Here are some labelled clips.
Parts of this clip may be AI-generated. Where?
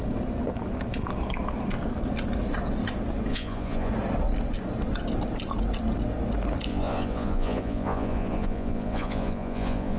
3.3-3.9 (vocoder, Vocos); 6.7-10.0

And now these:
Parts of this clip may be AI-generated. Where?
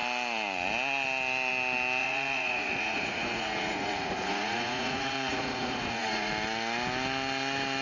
2.0-6.3 (vocoder, Vocos)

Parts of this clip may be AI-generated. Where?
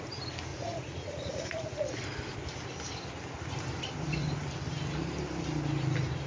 0.5-1.9 (vocoder, Vocos)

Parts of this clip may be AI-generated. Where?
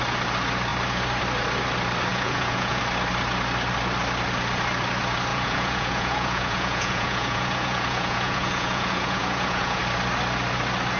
2.1-2.8 (vocoder, Vocos); 5.3-9.8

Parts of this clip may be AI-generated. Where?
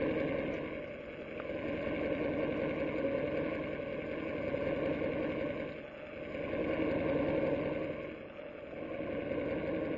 none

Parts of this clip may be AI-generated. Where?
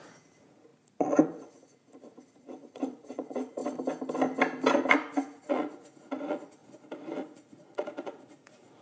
0.0-3.6 (vocoder, Vocos); 4.9-8.8